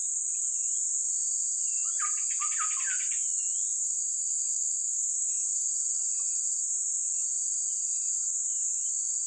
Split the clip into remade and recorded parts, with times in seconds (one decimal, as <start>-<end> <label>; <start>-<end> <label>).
0.0-3.6 recorded; 3.6-5.7 remade; 5.7-9.3 recorded